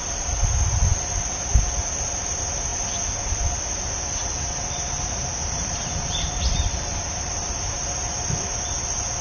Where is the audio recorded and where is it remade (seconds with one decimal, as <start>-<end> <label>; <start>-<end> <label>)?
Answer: 0.0-9.2 recorded